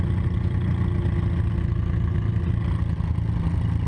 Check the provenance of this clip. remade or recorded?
recorded